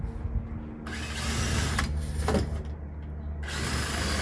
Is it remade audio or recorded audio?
recorded